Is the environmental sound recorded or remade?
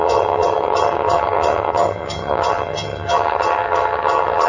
remade